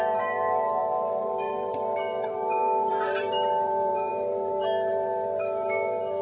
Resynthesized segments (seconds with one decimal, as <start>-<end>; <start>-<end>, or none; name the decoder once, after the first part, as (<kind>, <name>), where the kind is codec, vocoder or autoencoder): 0.0-6.2 (vocoder, BigVGAN v2)